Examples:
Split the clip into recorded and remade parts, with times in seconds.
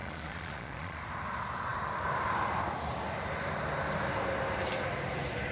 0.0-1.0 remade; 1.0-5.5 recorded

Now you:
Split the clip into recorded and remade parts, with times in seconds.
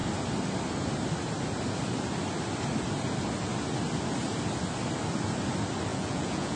0.0-5.9 recorded; 5.9-6.6 remade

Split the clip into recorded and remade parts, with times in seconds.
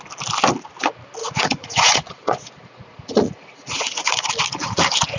0.0-1.2 recorded; 1.2-4.3 remade; 4.3-5.2 recorded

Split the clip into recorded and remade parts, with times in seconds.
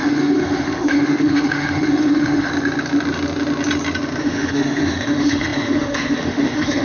0.0-2.5 remade; 2.5-4.2 recorded; 4.2-6.8 remade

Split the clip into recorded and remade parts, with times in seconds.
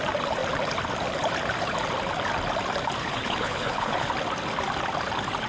0.0-3.0 recorded; 3.0-4.1 remade; 4.1-5.5 recorded